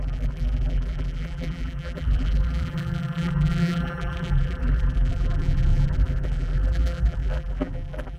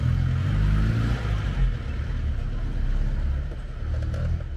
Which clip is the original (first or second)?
second